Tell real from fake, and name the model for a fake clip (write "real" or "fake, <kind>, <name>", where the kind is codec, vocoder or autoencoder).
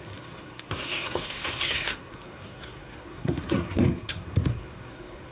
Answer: fake, codec, SNAC